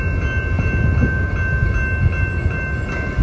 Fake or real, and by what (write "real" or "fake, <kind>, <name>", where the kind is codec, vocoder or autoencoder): real